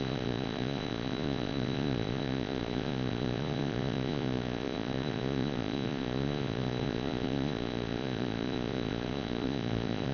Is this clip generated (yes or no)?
yes